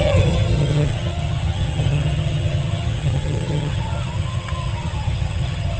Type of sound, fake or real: fake